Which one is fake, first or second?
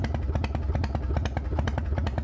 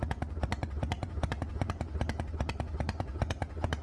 second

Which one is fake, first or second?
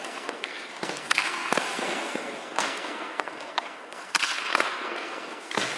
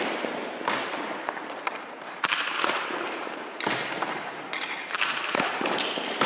first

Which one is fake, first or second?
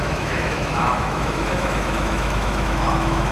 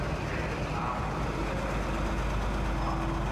first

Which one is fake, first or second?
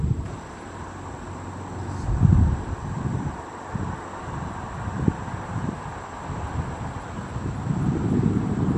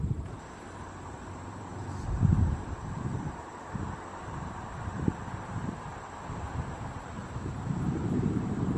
second